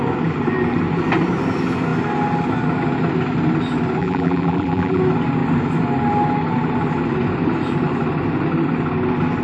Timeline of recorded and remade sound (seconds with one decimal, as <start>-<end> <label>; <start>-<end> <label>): 0.0-4.0 recorded; 4.0-5.0 remade; 5.0-9.4 recorded